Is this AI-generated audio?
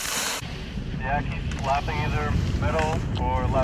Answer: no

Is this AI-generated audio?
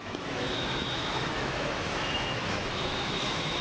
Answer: yes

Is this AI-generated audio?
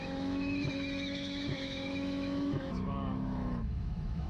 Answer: yes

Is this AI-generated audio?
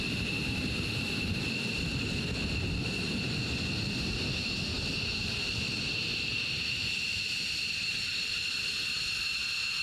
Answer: no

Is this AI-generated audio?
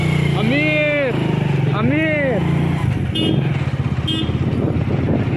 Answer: no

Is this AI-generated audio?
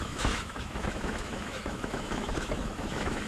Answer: yes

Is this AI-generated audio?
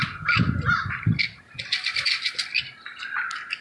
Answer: no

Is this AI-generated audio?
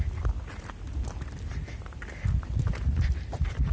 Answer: no